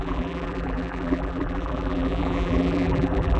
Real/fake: fake